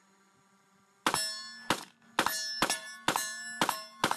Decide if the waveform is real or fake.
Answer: real